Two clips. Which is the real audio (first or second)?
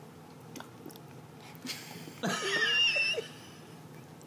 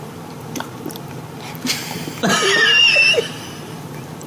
first